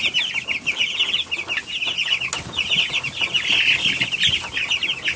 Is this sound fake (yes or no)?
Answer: no